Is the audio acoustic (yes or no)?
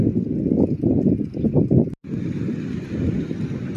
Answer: yes